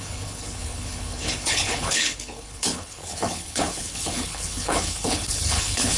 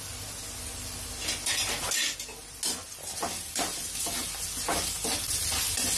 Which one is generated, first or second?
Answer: first